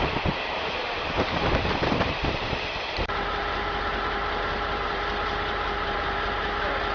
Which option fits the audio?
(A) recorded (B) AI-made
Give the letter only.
B